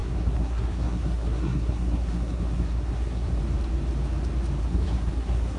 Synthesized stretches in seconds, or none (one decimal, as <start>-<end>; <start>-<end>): 0.0-3.4; 4.6-5.6